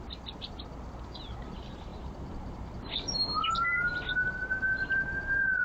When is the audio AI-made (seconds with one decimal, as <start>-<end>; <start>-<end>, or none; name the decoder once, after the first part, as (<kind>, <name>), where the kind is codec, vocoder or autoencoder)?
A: 1.9-2.8 (vocoder, BigVGAN v2)